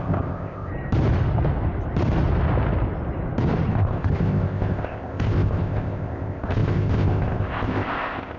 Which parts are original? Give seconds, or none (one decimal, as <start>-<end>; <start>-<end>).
0.7-3.7